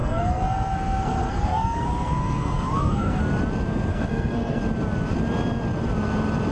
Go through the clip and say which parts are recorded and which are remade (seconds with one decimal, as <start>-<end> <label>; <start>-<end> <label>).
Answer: 0.0-3.2 remade; 3.2-3.9 recorded; 3.9-4.6 remade; 4.6-6.5 recorded